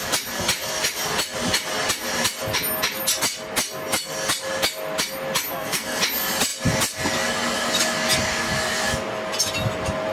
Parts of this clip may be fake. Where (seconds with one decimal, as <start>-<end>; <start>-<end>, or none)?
5.5-6.0